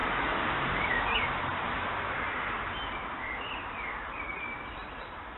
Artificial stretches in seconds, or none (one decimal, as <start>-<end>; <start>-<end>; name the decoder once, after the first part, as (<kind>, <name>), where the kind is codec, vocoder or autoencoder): 0.0-1.3 (vocoder, BigVGAN v2); 3.0-4.2

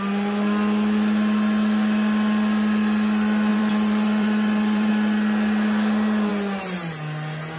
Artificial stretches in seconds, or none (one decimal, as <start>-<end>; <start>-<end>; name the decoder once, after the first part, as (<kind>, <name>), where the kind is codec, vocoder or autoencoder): 3.5-4.9 (vocoder, BigVGAN v2)